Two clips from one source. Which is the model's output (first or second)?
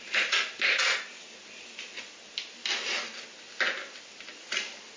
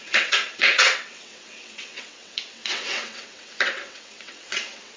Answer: second